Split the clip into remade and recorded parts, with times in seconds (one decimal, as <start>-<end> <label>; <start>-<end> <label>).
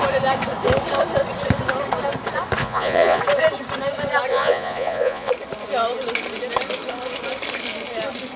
0.0-2.6 recorded; 2.6-3.2 remade; 3.2-4.3 recorded; 4.3-5.3 remade; 5.3-8.4 recorded